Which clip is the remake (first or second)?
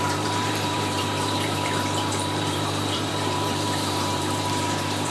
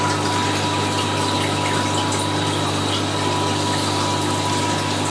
first